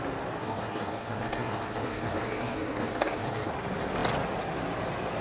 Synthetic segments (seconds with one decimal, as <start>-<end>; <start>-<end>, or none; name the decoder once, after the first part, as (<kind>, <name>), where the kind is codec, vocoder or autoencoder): 0.4-3.5 (codec, SNAC)